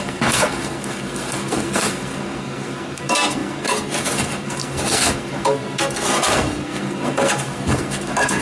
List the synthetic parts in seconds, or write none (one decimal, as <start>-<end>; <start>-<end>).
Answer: 0.0-8.4